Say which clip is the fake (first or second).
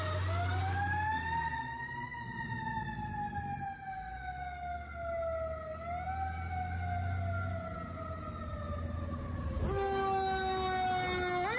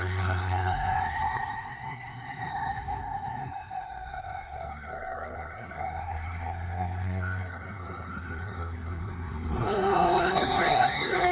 second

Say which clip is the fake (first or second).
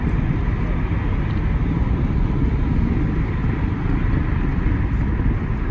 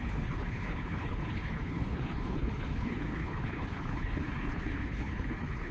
second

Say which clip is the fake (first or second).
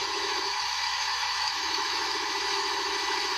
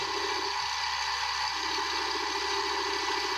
first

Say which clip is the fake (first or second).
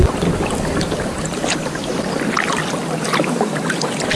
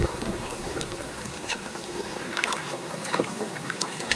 second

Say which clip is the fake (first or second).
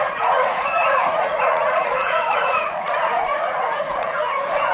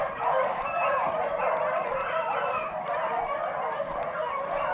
first